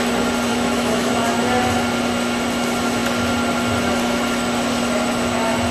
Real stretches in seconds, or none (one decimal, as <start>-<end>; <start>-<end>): 0.0-0.5; 1.1-5.7